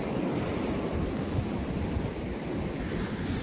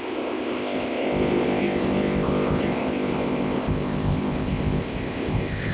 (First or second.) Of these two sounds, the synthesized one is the second